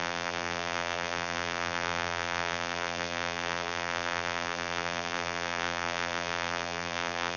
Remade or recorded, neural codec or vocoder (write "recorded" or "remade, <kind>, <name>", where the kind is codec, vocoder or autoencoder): remade, vocoder, BigVGAN v2